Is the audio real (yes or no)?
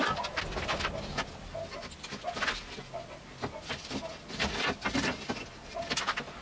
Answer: yes